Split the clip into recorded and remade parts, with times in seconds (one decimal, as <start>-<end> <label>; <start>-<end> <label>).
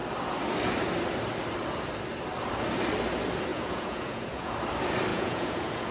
0.0-3.5 recorded; 3.5-4.5 remade; 4.5-5.1 recorded; 5.1-5.9 remade